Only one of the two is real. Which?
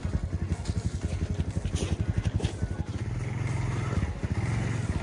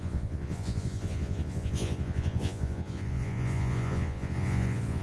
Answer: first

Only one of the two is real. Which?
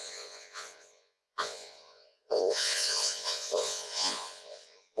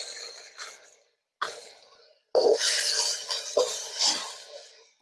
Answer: second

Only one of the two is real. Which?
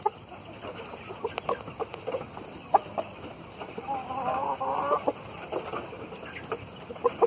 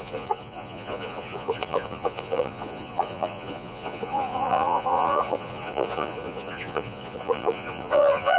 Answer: first